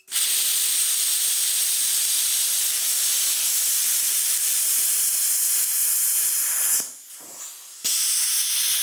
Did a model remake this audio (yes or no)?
no